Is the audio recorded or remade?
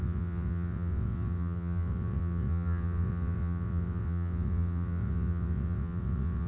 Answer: remade